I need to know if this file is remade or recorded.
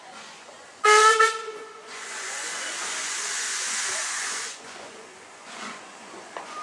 remade